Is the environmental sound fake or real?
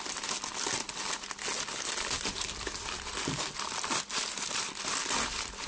real